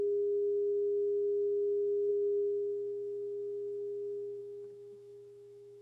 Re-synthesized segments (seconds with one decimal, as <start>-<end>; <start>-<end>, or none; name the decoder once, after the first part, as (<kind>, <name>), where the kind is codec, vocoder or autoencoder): 0.0-5.8 (autoencoder, DAC-VAE)